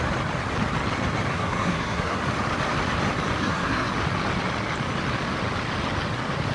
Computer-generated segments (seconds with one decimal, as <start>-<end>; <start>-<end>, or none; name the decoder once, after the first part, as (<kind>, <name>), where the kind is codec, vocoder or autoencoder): 1.3-2.2 (codec, SNAC); 3.4-3.9